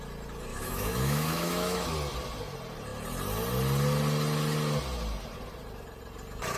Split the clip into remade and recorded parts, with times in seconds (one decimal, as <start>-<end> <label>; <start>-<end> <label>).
0.0-0.5 recorded; 0.5-1.9 remade; 1.9-6.6 recorded